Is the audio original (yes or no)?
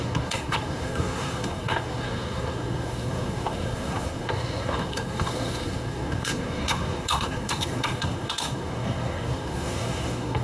no